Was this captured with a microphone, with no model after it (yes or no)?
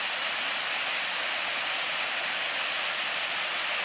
yes